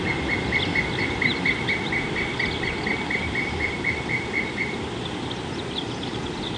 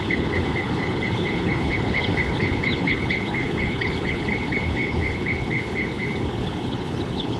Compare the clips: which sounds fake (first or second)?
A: second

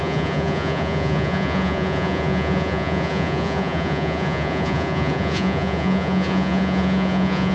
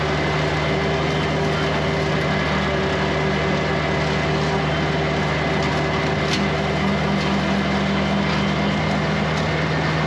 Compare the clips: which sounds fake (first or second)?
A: first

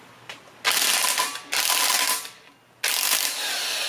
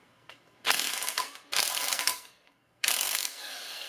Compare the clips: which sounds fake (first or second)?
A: second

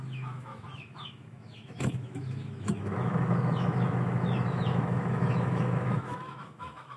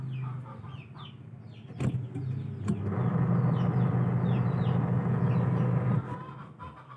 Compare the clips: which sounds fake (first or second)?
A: first